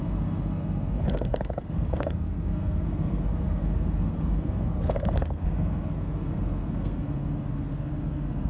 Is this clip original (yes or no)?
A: no